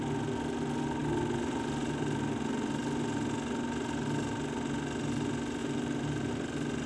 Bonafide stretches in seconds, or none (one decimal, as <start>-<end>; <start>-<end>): 0.0-5.6; 6.3-6.9